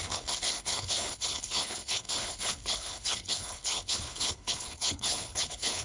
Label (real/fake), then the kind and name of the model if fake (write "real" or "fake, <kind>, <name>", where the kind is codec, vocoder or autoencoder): fake, codec, HILCodec